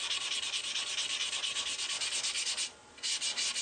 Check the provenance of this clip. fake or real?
real